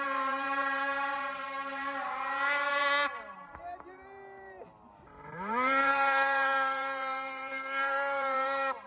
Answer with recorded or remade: remade